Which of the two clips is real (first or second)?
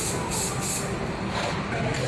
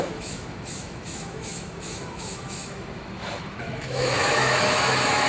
first